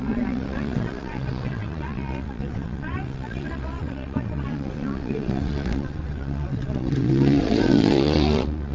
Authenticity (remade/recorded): remade